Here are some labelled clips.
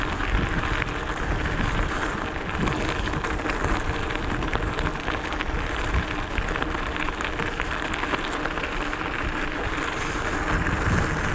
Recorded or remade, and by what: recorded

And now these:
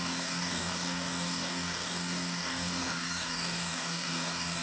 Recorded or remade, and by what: remade, codec, DAC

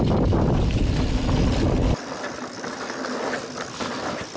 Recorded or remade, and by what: recorded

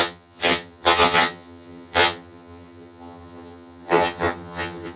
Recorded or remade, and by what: remade, vocoder, HiFi-GAN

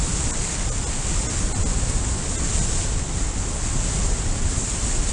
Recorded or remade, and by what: recorded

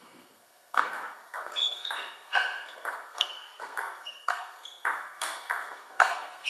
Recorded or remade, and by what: remade, codec, SNAC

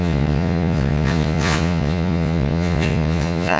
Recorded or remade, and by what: remade, vocoder, Vocos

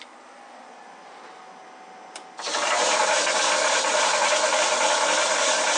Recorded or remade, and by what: recorded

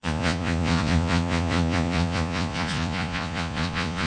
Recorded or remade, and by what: remade, vocoder, Vocos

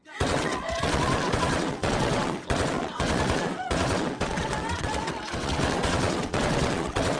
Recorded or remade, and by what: remade, vocoder, WaveNeXt